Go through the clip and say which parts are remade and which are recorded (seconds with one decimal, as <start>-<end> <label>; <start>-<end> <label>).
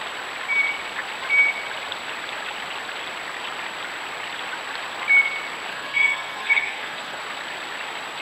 0.0-5.7 recorded; 5.7-7.2 remade; 7.2-8.2 recorded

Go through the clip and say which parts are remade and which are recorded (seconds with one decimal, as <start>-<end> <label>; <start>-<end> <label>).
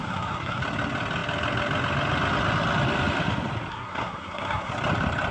0.0-0.6 remade; 0.6-3.7 recorded; 3.7-4.7 remade; 4.7-5.3 recorded